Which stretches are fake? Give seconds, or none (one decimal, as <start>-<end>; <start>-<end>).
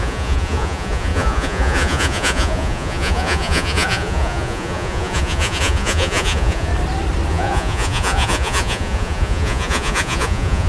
0.0-6.7; 7.3-10.7